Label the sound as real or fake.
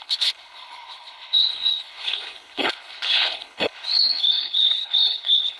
fake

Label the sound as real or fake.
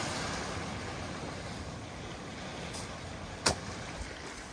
real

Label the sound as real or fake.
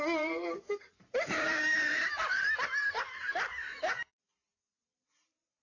fake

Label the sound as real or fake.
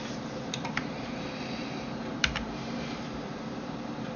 fake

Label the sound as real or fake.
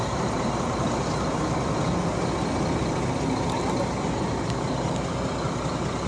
real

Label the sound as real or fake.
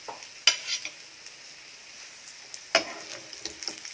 real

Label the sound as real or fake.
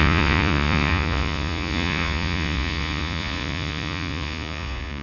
fake